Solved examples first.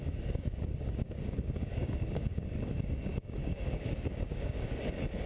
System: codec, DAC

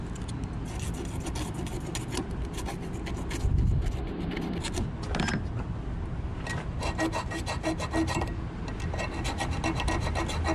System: none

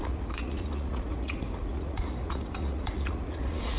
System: vocoder, Vocos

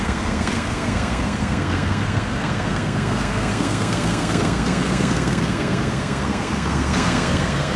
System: codec, SNAC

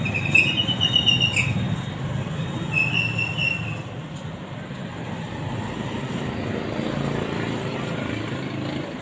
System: none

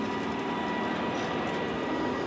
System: none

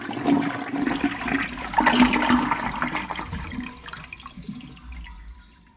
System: none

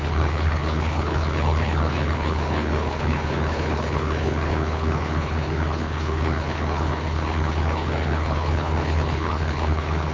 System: codec, HILCodec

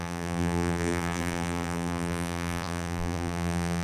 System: vocoder, BigVGAN v2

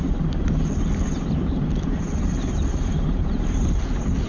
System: vocoder, BigVGAN v2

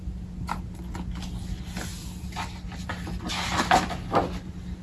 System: none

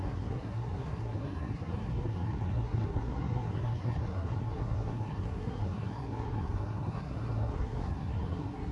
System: codec, SNAC